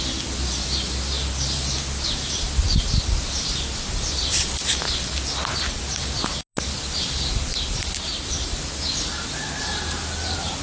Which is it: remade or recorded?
recorded